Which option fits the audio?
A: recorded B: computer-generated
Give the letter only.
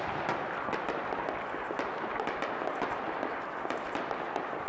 A